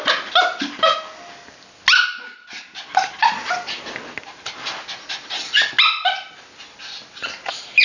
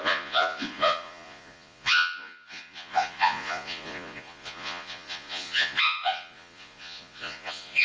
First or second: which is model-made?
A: second